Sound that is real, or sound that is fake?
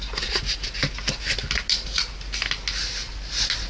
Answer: real